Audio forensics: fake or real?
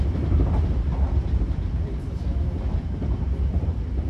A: real